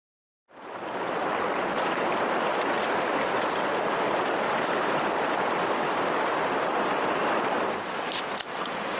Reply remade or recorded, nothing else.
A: recorded